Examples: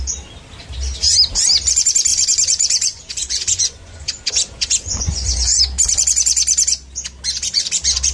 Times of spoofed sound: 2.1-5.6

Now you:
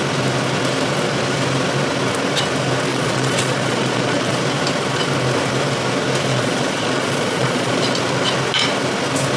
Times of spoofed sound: 2.9-4.4; 6.3-8.0

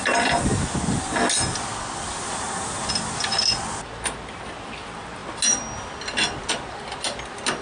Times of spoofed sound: none

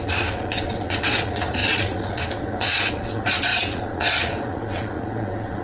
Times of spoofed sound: 0.0-5.6